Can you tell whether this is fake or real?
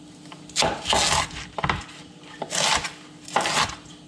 real